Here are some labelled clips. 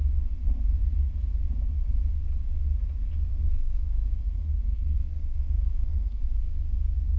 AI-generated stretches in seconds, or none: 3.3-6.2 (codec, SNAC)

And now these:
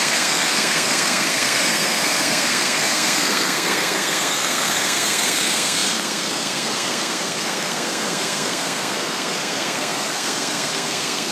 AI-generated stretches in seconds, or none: 0.0-11.3 (codec, SNAC)

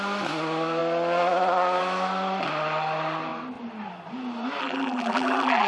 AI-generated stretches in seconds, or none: 4.6-5.7 (vocoder, BigVGAN v2)

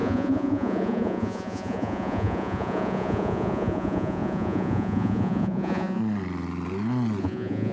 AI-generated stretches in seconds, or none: 0.0-6.0 (vocoder, Vocos); 7.2-7.7

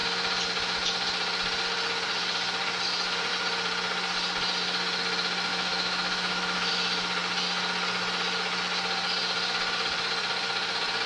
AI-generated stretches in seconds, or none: 5.5-6.7 (autoencoder, DAC-VAE)

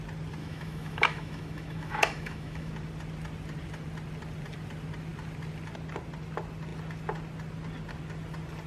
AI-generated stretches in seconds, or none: 0.4-2.7 (autoencoder, DAC-VAE)